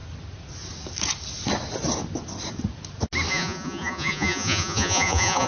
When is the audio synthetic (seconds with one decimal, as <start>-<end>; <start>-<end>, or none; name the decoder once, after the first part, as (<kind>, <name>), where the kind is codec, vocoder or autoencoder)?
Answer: 3.3-5.5 (vocoder, Vocos)

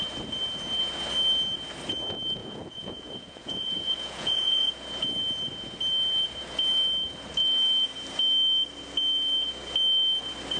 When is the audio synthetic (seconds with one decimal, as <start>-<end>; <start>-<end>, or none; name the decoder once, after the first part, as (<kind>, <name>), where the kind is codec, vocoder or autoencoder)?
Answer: 2.4-4.7 (vocoder, Vocos)

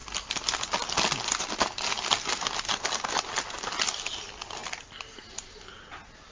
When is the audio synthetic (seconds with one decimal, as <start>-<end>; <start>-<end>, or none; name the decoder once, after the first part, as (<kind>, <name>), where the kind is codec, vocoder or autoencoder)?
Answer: none